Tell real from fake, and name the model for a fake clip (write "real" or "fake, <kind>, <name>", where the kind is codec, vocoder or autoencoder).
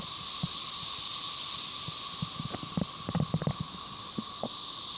real